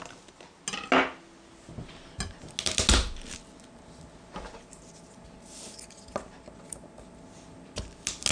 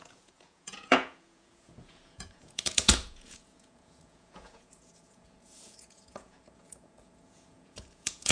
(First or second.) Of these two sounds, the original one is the first